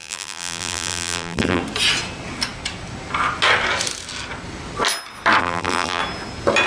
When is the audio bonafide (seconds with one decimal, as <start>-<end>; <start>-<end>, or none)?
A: 1.6-5.4; 6.0-6.7